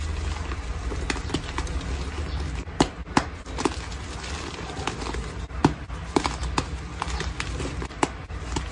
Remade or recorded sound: recorded